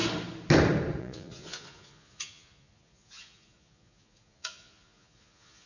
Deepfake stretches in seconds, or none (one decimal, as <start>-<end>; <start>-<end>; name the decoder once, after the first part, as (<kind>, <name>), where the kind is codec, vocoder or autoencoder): 1.0-5.7 (vocoder, Vocos)